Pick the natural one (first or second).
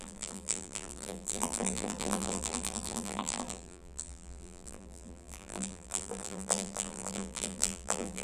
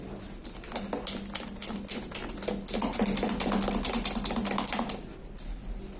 second